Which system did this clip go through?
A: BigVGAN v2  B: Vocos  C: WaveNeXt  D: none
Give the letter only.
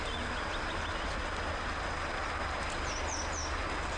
D